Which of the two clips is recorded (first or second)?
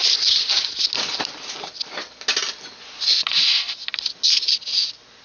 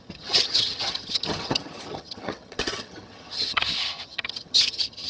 first